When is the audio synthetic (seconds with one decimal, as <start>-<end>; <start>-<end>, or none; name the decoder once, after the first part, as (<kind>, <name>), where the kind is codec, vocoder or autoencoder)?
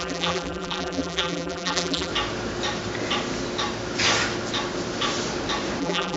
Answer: 0.0-2.1 (vocoder, BigVGAN v2); 5.8-6.2